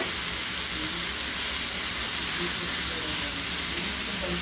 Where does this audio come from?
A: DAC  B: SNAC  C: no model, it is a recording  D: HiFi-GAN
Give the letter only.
C